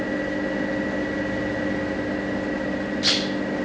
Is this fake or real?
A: real